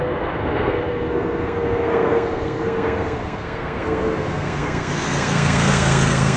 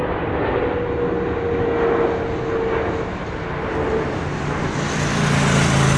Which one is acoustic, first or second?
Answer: second